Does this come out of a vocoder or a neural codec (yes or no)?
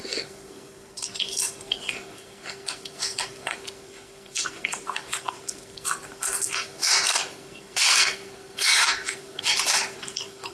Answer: yes